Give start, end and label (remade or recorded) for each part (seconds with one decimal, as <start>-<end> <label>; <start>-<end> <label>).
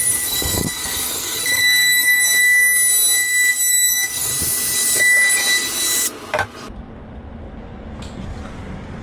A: 0.0-2.4 remade; 2.4-3.7 recorded; 3.7-4.3 remade; 4.3-9.0 recorded